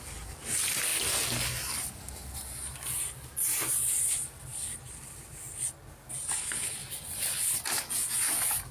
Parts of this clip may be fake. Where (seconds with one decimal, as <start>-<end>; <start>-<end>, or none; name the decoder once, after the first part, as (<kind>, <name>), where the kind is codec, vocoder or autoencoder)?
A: 4.5-5.9 (vocoder, BigVGAN v2); 6.8-7.5